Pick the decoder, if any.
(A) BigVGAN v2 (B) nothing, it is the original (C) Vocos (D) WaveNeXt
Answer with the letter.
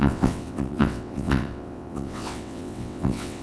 D